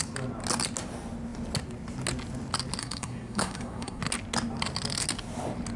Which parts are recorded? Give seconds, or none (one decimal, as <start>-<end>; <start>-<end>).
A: 0.0-2.8; 4.0-5.8